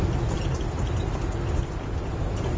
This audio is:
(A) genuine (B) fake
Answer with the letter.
A